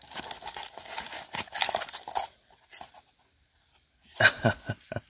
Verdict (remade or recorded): recorded